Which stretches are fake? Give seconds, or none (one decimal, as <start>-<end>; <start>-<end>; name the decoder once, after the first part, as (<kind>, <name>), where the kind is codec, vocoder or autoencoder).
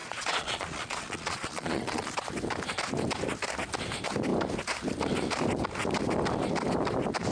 0.0-2.1 (vocoder, Vocos)